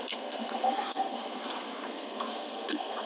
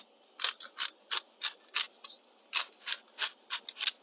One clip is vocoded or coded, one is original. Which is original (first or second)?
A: second